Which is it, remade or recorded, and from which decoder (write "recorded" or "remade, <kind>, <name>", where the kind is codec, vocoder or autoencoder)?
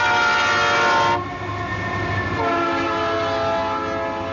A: recorded